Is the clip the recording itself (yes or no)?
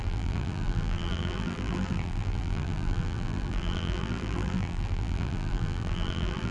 no